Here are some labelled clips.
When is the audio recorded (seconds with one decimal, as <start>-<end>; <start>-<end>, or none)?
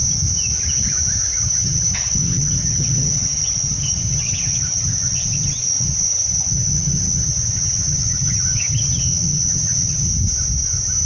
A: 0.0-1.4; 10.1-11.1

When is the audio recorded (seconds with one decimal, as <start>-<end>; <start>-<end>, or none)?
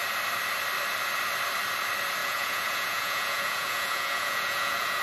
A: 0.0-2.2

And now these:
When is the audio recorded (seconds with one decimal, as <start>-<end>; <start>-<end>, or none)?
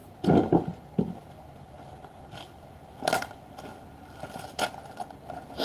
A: 0.0-5.6